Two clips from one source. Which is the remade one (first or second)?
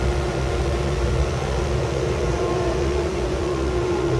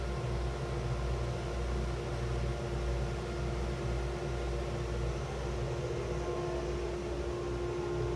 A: first